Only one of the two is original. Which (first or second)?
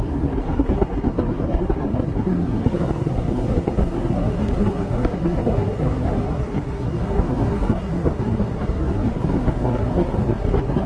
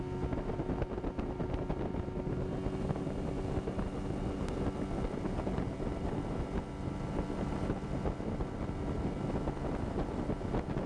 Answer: second